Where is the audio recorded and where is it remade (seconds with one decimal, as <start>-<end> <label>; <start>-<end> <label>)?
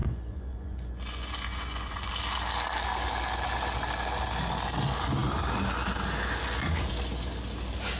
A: 0.0-2.1 remade; 2.1-8.0 recorded